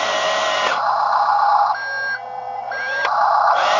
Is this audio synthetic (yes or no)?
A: no